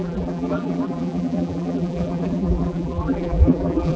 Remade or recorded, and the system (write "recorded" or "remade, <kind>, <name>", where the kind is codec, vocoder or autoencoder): remade, vocoder, BigVGAN v2